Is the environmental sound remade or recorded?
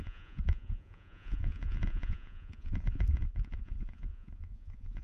remade